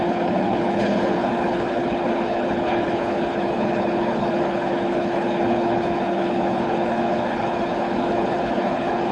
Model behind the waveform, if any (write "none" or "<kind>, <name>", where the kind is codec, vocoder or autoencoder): codec, HILCodec